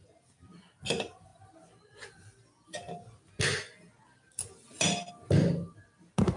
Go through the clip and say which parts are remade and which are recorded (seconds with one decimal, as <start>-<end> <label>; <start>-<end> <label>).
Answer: 0.0-6.4 recorded